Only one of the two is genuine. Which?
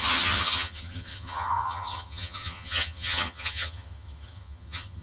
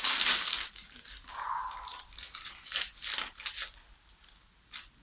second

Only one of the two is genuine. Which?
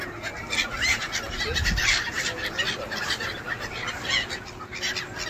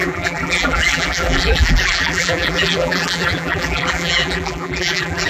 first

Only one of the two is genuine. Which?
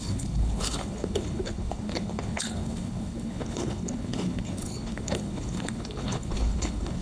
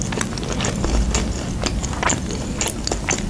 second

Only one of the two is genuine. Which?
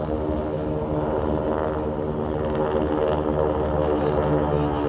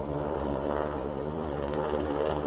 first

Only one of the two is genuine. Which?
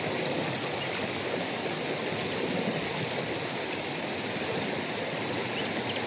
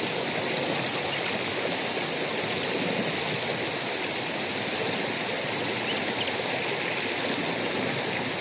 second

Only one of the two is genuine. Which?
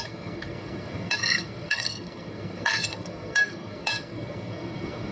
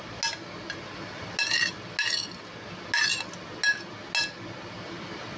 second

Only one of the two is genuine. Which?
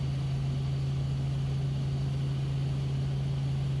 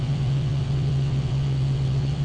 first